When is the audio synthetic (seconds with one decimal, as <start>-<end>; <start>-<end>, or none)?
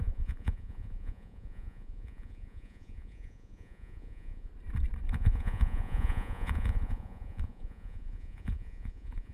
0.0-4.5; 5.1-9.3